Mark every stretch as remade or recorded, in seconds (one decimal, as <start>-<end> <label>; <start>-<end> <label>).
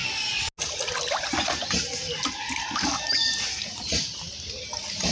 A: 0.0-5.1 recorded